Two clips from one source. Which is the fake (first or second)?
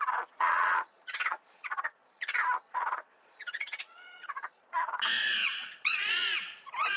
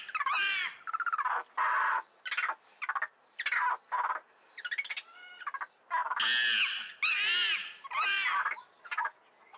first